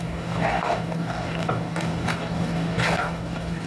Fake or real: fake